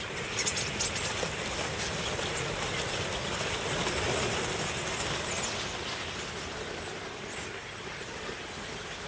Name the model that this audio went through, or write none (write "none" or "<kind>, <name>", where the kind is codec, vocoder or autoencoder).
none